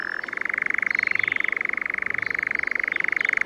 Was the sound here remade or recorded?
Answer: recorded